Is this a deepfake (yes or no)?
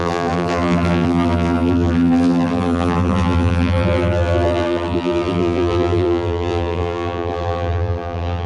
yes